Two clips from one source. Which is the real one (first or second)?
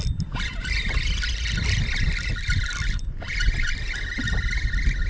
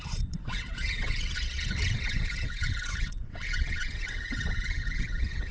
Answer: first